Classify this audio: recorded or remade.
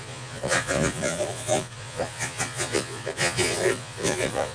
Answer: remade